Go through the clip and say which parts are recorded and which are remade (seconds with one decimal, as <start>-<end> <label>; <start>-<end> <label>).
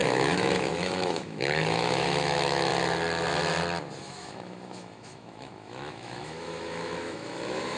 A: 0.0-2.7 remade; 2.7-4.0 recorded; 4.0-7.8 remade